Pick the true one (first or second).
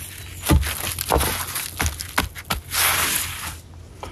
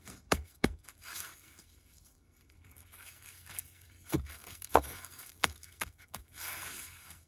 first